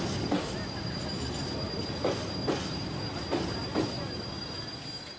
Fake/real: real